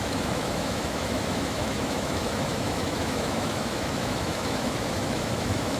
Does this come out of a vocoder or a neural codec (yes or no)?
yes